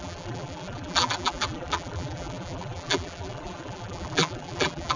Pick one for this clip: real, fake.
fake